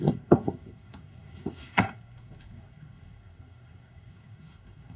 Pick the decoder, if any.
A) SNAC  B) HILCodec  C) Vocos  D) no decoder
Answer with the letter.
A